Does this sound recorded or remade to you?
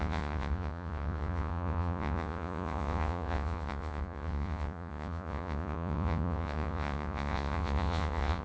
remade